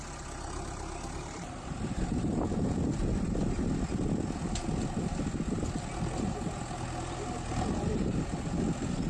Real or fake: real